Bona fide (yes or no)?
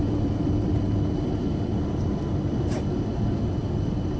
yes